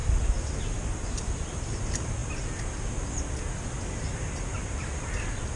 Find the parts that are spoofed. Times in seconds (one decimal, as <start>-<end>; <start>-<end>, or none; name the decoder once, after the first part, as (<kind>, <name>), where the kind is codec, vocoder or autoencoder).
none